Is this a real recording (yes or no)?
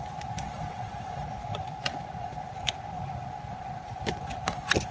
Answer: no